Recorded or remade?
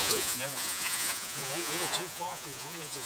remade